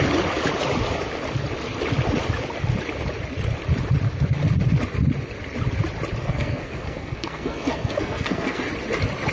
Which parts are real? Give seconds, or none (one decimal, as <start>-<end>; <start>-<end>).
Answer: 0.0-6.2; 8.6-9.3